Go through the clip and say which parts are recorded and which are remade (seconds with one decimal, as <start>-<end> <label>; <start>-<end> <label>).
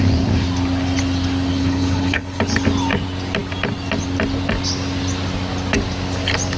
0.0-1.5 recorded; 1.5-2.4 remade; 2.4-6.6 recorded